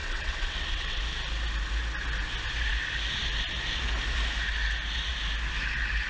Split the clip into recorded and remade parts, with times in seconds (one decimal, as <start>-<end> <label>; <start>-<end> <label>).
0.0-1.0 remade; 1.0-6.1 recorded

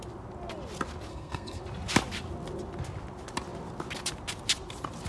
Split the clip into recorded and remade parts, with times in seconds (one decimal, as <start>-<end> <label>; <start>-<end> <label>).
0.0-1.1 recorded; 1.1-1.6 remade; 1.6-5.1 recorded

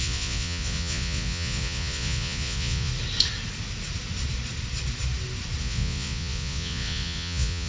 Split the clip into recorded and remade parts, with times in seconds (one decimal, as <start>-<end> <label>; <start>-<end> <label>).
0.0-2.9 remade; 2.9-5.6 recorded; 5.6-7.7 remade

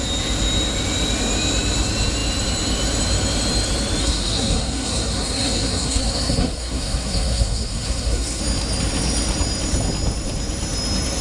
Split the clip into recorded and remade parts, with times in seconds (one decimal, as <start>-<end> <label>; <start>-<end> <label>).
0.0-4.0 recorded; 4.0-8.4 remade; 8.4-11.2 recorded